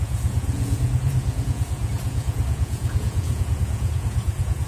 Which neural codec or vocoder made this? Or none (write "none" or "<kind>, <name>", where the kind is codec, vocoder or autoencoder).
vocoder, Vocos